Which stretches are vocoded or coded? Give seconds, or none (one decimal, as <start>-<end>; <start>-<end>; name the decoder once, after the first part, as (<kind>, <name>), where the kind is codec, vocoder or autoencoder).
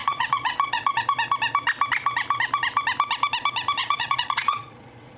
0.0-1.0 (vocoder, Vocos); 3.8-5.2